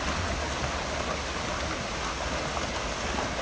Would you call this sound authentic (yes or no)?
yes